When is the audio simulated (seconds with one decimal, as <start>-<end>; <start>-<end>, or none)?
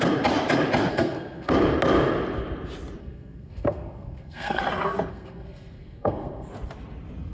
0.9-1.5; 3.0-4.6; 5.1-6.5